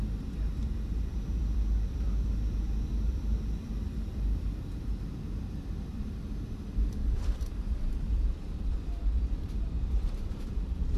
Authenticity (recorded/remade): remade